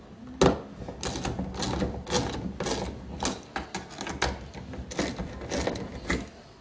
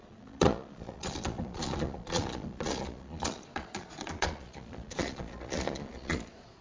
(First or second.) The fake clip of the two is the second